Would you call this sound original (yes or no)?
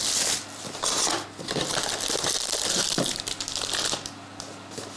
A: yes